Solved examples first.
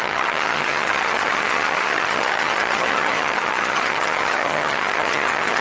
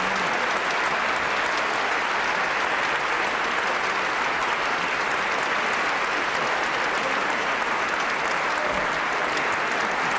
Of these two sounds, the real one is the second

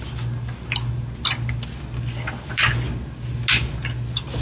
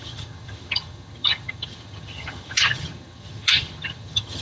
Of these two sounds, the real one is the first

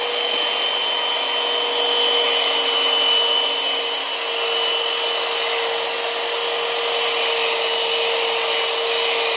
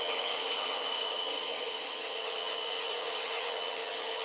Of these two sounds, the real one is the first